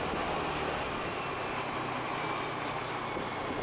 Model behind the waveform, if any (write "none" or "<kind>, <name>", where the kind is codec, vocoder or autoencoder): none